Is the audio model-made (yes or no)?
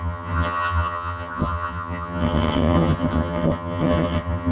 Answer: yes